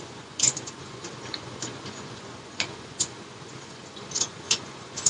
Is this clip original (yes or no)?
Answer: no